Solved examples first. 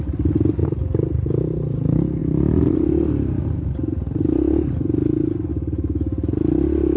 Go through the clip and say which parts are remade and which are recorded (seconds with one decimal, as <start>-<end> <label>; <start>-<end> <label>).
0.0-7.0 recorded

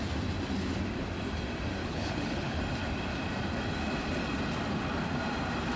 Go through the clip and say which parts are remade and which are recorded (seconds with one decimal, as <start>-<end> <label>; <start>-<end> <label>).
0.0-1.8 recorded; 1.8-2.6 remade; 2.6-5.8 recorded

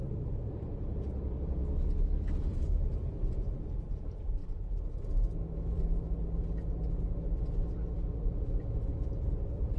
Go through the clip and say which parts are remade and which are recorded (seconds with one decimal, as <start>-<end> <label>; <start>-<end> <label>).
0.0-1.6 remade; 1.6-2.3 recorded; 2.3-4.4 remade; 4.4-9.4 recorded; 9.4-9.8 remade

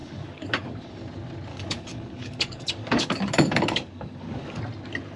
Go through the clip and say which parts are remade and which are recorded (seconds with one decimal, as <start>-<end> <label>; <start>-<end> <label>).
0.0-0.9 remade; 0.9-1.5 recorded; 1.5-4.6 remade; 4.6-5.2 recorded

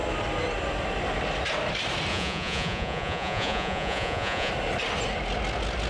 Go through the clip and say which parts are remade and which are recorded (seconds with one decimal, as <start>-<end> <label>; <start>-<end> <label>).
0.0-2.1 recorded; 2.1-4.5 remade; 4.5-5.9 recorded

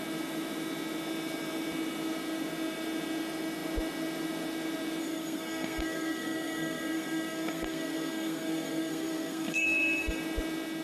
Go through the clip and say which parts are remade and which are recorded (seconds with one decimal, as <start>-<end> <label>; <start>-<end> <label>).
0.0-5.0 recorded; 5.0-10.2 remade; 10.2-10.8 recorded

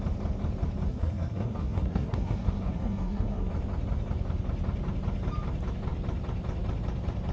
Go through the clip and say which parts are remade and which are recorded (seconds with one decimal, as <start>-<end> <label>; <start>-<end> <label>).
0.0-0.9 recorded; 0.9-3.5 remade; 3.5-7.3 recorded